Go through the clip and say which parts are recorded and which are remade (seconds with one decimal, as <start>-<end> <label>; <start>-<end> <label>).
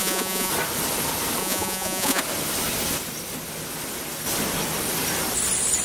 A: 0.0-0.5 remade; 0.5-1.4 recorded; 1.4-2.2 remade; 2.2-5.8 recorded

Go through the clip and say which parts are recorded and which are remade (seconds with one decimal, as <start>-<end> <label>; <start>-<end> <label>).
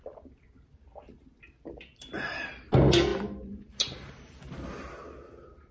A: 0.0-5.7 recorded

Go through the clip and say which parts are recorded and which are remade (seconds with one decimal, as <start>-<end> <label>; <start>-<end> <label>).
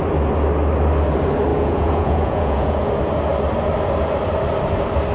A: 0.0-1.5 recorded; 1.5-2.9 remade; 2.9-5.1 recorded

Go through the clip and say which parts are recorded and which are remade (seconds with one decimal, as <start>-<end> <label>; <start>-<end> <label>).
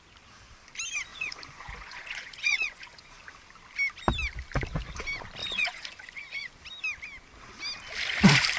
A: 0.0-1.1 recorded; 1.1-3.2 remade; 3.2-5.4 recorded; 5.4-6.6 remade; 6.6-8.6 recorded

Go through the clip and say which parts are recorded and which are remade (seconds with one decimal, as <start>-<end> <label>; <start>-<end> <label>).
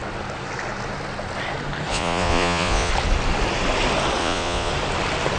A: 0.0-1.9 recorded; 1.9-2.9 remade; 2.9-4.2 recorded; 4.2-4.7 remade; 4.7-5.4 recorded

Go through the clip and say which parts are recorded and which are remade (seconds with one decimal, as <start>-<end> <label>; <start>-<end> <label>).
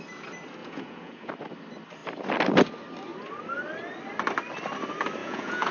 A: 0.0-0.6 recorded; 0.6-1.3 remade; 1.3-5.2 recorded; 5.2-5.7 remade